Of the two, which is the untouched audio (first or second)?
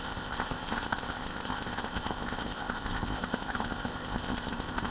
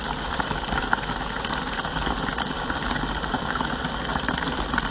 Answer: second